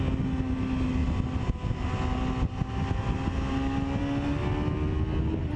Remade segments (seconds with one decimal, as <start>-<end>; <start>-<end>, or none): none